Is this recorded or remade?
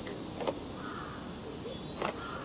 recorded